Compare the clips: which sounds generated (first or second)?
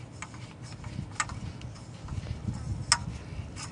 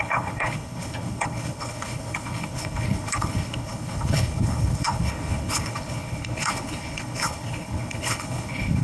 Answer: second